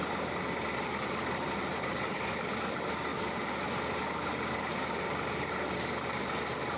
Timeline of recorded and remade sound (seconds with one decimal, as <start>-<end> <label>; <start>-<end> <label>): 0.0-0.7 recorded; 0.7-2.6 remade; 2.6-3.1 recorded; 3.1-3.7 remade; 3.7-6.8 recorded